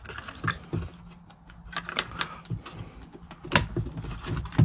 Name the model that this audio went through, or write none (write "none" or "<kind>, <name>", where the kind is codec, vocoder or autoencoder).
none